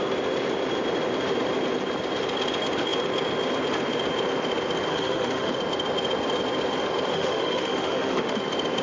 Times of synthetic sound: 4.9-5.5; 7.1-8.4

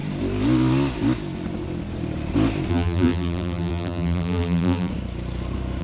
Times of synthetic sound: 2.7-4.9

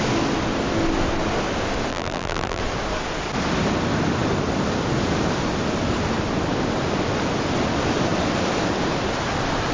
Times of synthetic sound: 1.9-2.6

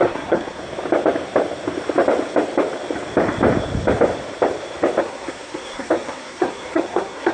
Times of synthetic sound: 0.0-0.6; 5.0-7.3

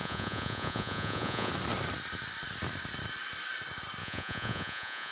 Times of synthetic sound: 0.0-1.5; 4.0-5.1

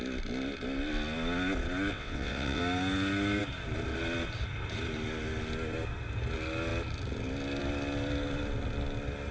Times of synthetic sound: 1.9-2.6

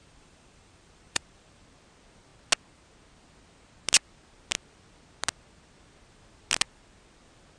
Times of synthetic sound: 0.0-1.6